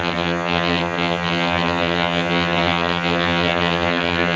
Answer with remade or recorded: remade